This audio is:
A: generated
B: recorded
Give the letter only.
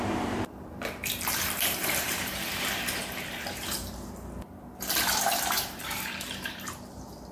A